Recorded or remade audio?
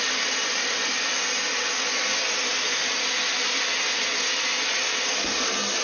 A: recorded